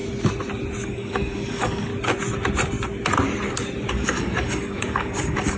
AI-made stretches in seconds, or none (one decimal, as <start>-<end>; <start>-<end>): 0.8-1.9; 3.9-5.6